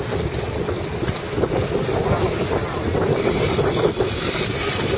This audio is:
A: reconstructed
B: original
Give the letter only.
A